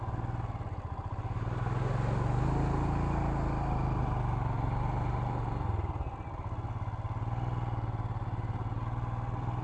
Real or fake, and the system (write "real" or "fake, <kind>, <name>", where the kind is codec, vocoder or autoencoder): real